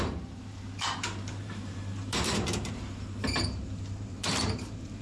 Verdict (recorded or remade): remade